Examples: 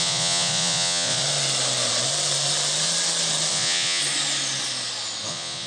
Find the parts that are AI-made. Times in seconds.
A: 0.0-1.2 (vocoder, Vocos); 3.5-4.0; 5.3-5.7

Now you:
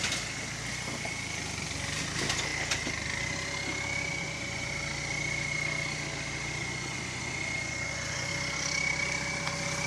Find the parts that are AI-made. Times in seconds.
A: 4.1-4.7 (vocoder, Vocos); 6.6-8.3

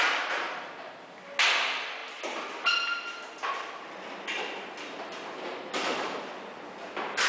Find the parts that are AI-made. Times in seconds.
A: none

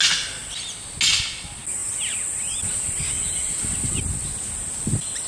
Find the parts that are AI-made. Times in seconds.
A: none

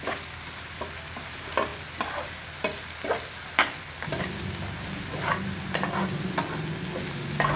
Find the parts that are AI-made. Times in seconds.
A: none

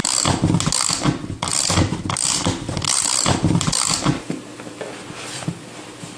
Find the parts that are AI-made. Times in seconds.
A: none

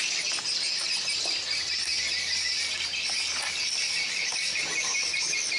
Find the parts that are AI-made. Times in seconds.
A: none